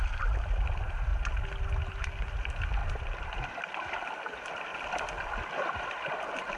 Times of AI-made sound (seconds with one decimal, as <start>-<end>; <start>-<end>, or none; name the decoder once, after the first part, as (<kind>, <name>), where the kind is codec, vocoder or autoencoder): 0.0-1.1 (vocoder, BigVGAN v2); 1.7-4.7; 5.7-6.6